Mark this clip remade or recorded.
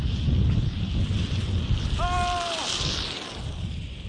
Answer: recorded